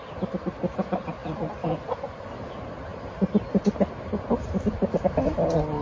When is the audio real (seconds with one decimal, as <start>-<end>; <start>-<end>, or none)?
0.0-5.8